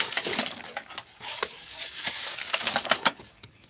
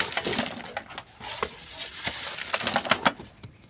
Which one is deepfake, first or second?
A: first